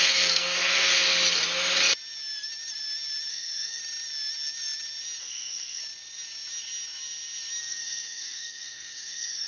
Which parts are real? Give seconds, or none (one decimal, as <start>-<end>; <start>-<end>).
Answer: 0.9-3.3; 3.8-5.2; 5.8-7.6